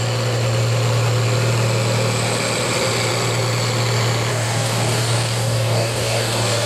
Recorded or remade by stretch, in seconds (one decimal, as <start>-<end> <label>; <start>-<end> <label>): 0.0-4.3 recorded; 4.3-6.7 remade